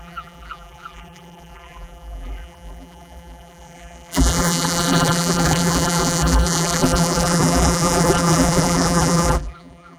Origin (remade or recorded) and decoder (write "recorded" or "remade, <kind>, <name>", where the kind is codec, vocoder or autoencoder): remade, vocoder, BigVGAN v2